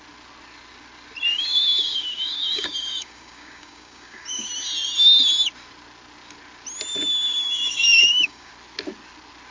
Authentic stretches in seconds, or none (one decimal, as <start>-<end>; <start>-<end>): 0.0-1.3; 4.5-7.3; 8.5-9.5